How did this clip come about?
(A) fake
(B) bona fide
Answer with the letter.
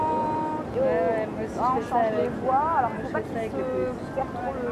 B